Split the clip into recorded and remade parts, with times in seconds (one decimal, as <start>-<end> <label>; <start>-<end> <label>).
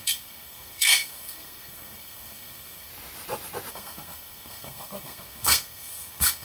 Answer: 0.0-2.9 remade; 2.9-3.7 recorded; 3.7-6.4 remade